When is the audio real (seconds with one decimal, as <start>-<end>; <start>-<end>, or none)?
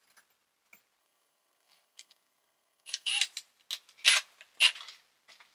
0.0-1.0; 3.1-5.5